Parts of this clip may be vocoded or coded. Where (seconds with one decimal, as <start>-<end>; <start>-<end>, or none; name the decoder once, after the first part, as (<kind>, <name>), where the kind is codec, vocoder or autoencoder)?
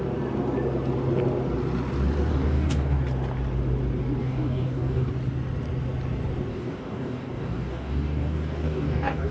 2.3-3.0 (codec, DAC); 4.2-5.1; 6.5-9.3